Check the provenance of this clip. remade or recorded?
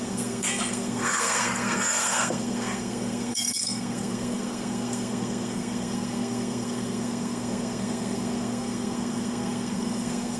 remade